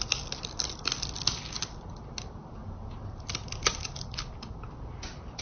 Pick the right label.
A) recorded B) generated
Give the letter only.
A